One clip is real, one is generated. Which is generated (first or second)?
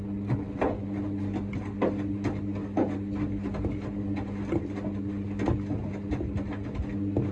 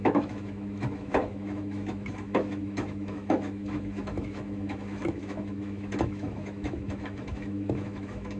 second